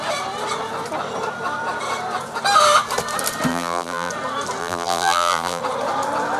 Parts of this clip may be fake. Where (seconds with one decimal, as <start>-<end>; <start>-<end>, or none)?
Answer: 3.5-4.1; 4.6-5.6